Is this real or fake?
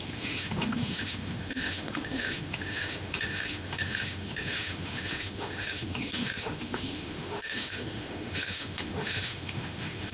fake